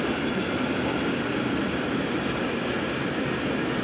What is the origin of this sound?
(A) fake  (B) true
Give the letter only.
B